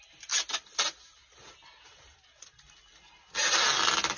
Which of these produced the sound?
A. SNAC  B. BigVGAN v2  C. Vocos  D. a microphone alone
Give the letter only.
D